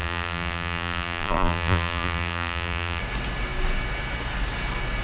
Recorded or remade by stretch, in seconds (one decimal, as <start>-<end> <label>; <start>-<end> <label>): 0.0-3.0 remade; 3.0-5.0 recorded

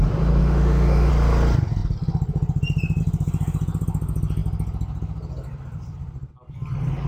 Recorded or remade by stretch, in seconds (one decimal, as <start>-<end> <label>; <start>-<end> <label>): 0.0-0.4 recorded; 0.4-1.1 remade; 1.1-7.1 recorded

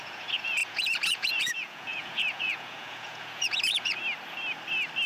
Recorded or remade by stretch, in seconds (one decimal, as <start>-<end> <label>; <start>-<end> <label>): 0.0-4.0 remade; 4.0-5.1 recorded

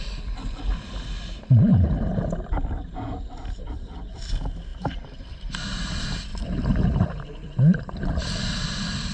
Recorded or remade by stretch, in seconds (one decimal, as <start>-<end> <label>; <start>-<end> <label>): 0.0-1.7 recorded; 1.7-4.3 remade; 4.3-4.7 recorded; 4.7-5.5 remade; 5.5-6.3 recorded; 6.3-8.4 remade; 8.4-9.1 recorded

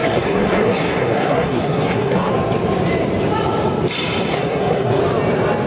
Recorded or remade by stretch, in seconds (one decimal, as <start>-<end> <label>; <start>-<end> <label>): 0.0-2.3 remade; 2.3-4.3 recorded; 4.3-5.0 remade; 5.0-5.7 recorded